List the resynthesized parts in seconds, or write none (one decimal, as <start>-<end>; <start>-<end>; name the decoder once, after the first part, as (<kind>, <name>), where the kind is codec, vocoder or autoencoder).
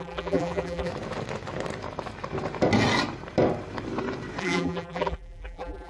0.0-0.9 (vocoder, BigVGAN v2); 4.4-5.9